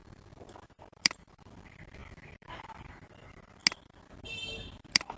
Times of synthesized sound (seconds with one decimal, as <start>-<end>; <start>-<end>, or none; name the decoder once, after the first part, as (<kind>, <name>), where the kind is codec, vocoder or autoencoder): 0.8-3.6 (vocoder, BigVGAN v2); 4.2-5.2